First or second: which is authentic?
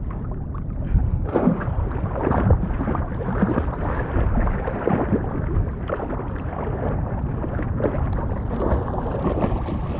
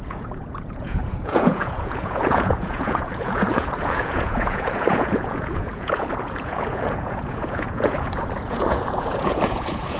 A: first